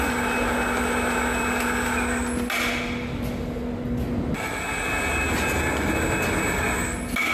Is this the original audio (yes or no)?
yes